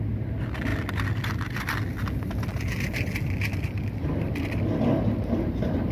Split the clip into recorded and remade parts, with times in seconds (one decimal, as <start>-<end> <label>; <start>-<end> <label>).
0.0-5.9 recorded